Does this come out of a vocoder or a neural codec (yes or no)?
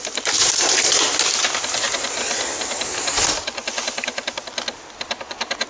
no